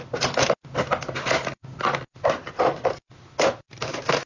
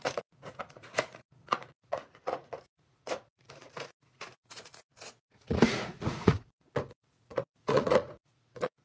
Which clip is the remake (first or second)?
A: second